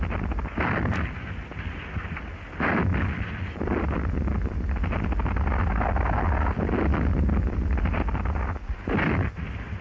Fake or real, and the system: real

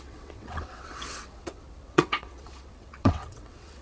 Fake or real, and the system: fake, vocoder, WaveNeXt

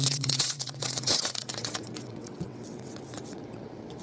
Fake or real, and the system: fake, vocoder, WaveNeXt